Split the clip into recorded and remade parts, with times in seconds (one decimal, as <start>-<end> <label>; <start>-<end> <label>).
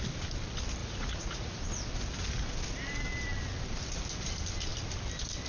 0.0-0.8 recorded; 0.8-1.6 remade; 1.6-5.5 recorded